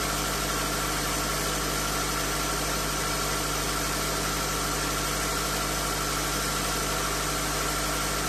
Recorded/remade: recorded